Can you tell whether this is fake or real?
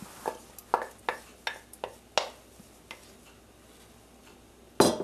real